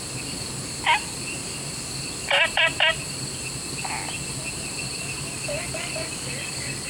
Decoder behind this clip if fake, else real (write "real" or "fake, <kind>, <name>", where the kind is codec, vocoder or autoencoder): real